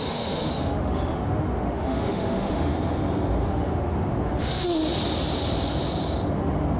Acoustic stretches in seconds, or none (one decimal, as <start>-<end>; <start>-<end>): 2.7-3.4; 4.8-6.3